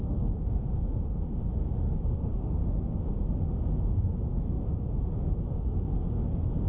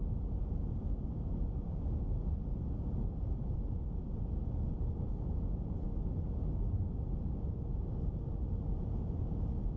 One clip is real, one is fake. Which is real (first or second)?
second